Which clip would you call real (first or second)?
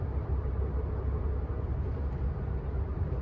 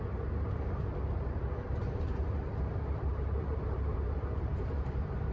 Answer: first